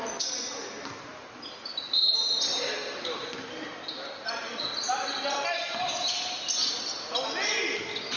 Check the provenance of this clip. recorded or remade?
recorded